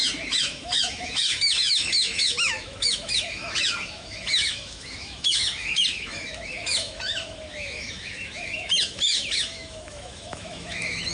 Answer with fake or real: fake